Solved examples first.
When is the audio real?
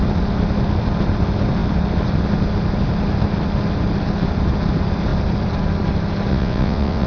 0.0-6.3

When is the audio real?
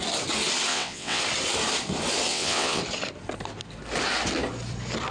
0.0-0.7; 1.2-2.3; 2.8-5.1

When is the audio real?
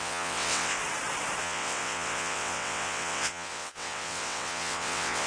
0.8-1.4